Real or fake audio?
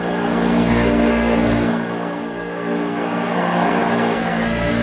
fake